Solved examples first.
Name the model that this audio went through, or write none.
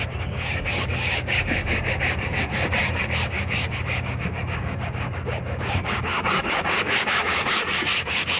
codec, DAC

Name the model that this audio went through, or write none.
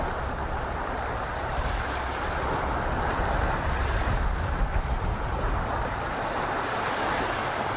vocoder, BigVGAN v2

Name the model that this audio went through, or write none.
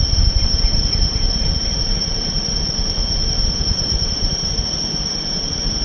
vocoder, BigVGAN v2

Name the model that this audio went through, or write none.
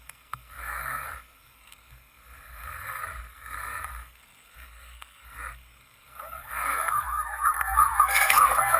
codec, SNAC